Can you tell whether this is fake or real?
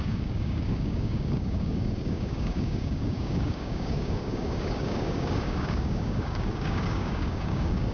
fake